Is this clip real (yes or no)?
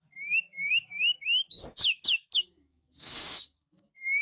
no